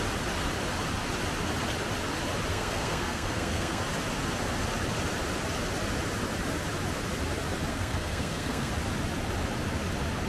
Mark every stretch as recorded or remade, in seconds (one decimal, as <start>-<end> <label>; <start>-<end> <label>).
0.0-2.5 recorded; 2.5-3.8 remade; 3.8-7.7 recorded; 7.7-8.7 remade; 8.7-10.3 recorded